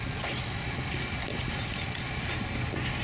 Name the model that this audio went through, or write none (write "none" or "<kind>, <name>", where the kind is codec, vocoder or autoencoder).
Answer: none